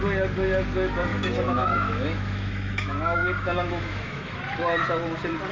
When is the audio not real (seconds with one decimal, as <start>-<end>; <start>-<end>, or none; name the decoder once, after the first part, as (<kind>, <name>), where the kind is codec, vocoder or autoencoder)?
1.1-4.4 (autoencoder, DAC-VAE)